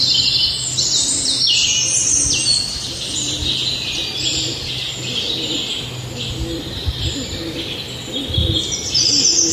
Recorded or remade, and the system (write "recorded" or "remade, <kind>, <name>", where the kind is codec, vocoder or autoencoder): recorded